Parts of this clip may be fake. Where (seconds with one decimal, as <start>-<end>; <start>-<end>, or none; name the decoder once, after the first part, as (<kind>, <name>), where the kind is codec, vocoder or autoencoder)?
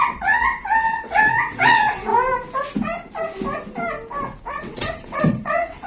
0.0-2.1 (vocoder, WaveNeXt); 4.5-5.9